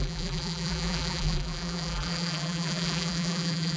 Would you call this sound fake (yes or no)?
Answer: yes